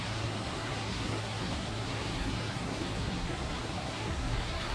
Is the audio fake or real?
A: fake